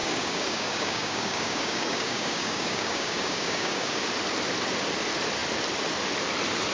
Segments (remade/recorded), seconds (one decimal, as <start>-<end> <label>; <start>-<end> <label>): 0.0-4.0 remade; 4.0-6.7 recorded